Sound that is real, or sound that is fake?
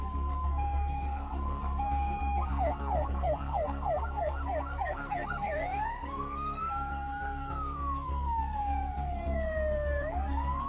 fake